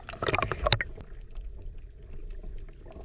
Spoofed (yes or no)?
no